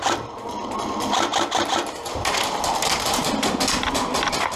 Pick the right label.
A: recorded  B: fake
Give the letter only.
A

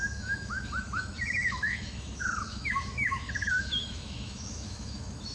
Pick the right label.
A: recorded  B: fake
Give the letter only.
B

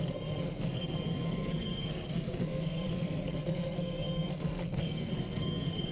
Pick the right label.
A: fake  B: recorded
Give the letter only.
A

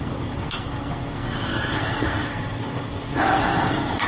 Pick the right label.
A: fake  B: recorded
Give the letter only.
A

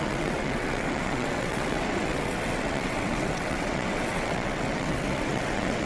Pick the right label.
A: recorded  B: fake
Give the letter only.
B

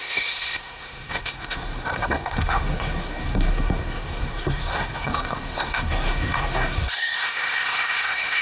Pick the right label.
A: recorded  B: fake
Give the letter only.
B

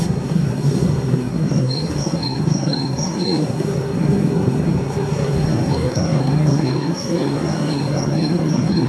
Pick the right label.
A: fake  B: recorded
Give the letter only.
A